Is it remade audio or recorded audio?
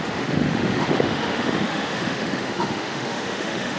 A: remade